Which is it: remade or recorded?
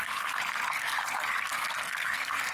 remade